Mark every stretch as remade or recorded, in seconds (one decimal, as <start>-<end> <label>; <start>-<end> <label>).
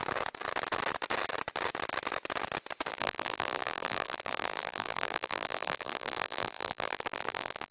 0.0-2.9 recorded; 2.9-7.7 remade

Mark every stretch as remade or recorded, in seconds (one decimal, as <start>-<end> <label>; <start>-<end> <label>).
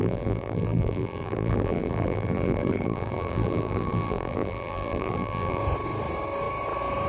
0.0-5.6 remade; 5.6-7.1 recorded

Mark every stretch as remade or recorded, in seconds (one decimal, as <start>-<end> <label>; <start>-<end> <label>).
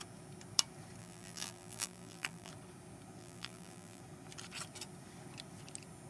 0.0-1.0 recorded; 1.0-2.5 remade; 2.5-3.2 recorded; 3.2-4.0 remade; 4.0-6.1 recorded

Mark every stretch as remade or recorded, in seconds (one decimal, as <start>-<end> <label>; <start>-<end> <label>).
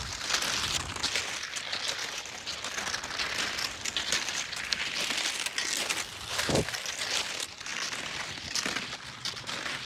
0.0-9.9 recorded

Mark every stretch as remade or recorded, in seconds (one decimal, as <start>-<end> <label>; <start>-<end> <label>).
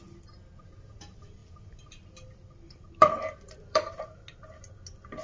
0.0-1.4 recorded; 1.4-4.2 remade; 4.2-5.2 recorded